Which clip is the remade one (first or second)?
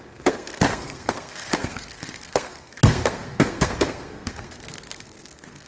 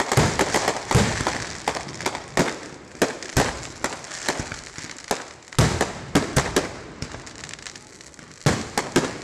first